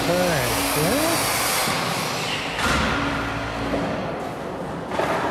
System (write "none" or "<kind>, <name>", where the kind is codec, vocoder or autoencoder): none